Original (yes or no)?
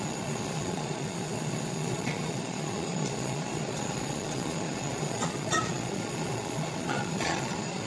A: no